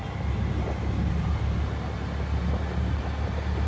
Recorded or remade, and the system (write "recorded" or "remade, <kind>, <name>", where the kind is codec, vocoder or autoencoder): recorded